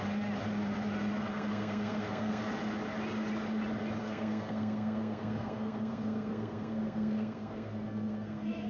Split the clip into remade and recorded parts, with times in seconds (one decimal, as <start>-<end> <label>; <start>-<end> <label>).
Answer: 0.0-1.3 recorded; 1.3-2.4 remade; 2.4-4.0 recorded; 4.0-8.7 remade